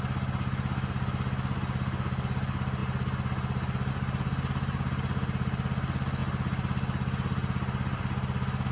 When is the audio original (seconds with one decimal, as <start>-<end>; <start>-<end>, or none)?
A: 0.0-8.7